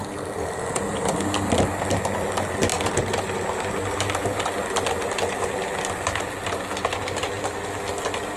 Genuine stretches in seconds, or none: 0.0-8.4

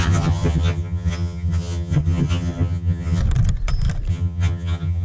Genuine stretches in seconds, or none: 3.2-4.1

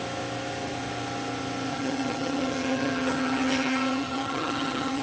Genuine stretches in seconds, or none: 0.0-1.7

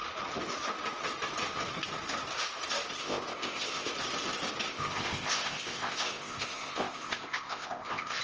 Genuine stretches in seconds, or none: 0.0-3.0; 3.9-4.7

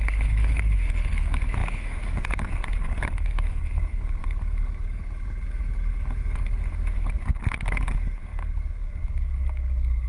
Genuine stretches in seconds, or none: none

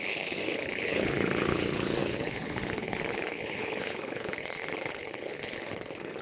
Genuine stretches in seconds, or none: none